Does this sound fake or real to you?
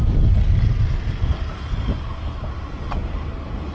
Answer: real